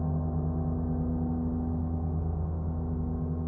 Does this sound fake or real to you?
real